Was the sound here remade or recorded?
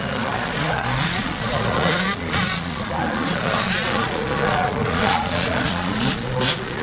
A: remade